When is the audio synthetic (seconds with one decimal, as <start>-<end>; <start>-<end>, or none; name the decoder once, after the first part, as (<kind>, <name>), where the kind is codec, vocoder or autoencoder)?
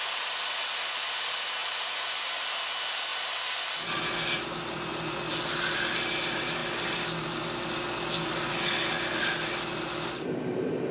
none